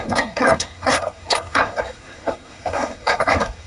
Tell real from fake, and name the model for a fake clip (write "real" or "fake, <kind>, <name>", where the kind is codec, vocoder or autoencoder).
fake, codec, SNAC